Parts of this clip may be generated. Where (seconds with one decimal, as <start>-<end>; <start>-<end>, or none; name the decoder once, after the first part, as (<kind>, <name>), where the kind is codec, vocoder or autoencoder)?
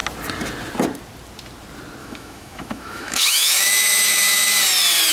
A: 2.0-4.5 (autoencoder, DAC-VAE)